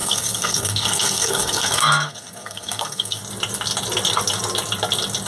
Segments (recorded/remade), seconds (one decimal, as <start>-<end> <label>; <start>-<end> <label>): 0.0-3.2 remade; 3.2-5.3 recorded